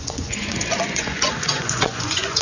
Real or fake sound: fake